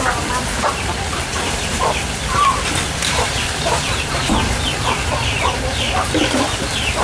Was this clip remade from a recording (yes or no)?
yes